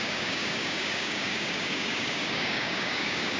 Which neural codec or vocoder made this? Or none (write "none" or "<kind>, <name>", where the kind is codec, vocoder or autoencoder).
codec, DAC